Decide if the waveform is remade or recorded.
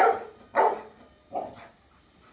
recorded